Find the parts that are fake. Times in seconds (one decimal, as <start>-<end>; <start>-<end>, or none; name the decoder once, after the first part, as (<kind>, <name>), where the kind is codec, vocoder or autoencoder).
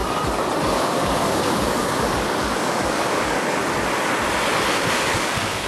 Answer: 0.6-3.6 (codec, DAC); 4.7-5.7